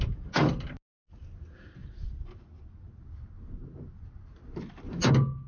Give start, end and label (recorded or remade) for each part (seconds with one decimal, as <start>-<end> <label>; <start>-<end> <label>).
0.0-5.5 recorded